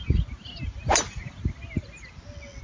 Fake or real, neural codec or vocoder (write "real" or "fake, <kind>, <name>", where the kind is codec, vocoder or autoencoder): real